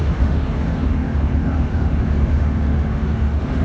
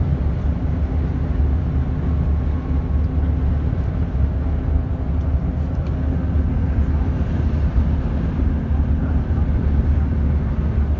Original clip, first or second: second